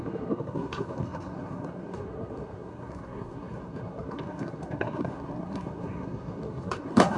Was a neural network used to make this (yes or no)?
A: yes